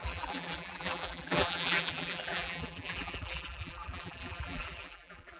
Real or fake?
fake